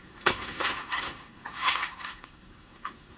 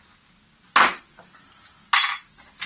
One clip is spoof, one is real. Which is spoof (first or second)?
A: first